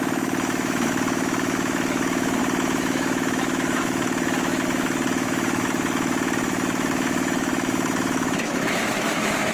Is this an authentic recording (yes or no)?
no